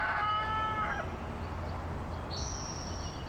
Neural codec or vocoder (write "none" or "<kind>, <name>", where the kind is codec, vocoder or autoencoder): none